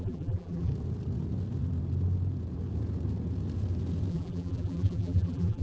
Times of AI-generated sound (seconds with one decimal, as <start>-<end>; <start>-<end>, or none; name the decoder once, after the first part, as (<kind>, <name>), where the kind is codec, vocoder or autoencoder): 0.0-0.7 (vocoder, BigVGAN v2); 4.1-5.6